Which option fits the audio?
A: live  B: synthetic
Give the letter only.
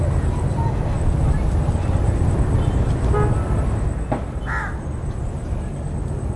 A